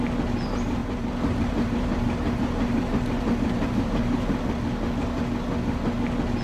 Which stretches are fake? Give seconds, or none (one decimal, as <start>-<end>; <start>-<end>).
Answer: 0.8-4.4